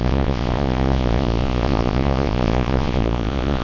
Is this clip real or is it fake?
fake